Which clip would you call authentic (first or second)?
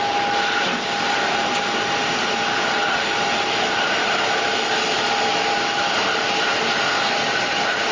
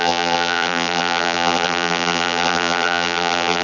first